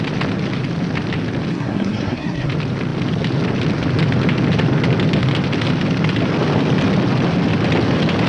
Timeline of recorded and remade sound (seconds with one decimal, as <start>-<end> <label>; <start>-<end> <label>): 0.0-1.5 recorded; 1.5-2.5 remade; 2.5-8.3 recorded